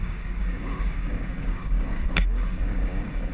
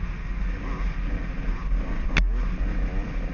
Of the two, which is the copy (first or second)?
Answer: first